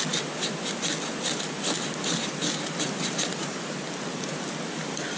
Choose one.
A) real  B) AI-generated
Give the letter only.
A